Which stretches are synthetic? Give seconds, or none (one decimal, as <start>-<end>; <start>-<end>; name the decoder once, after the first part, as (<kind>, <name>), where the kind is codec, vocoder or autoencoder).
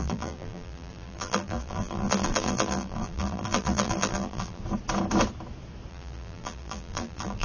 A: 0.0-4.6 (vocoder, BigVGAN v2); 5.9-7.4